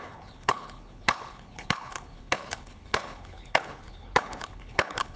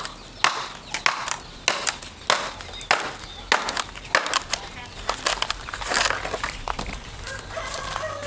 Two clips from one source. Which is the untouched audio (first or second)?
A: second